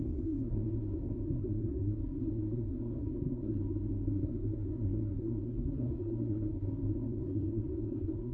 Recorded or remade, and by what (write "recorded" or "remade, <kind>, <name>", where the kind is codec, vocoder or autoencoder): remade, codec, SNAC